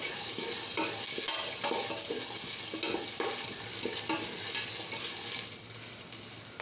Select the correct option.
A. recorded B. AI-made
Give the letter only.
A